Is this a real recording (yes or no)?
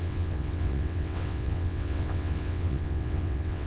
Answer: no